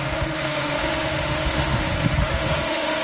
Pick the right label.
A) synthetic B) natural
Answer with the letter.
A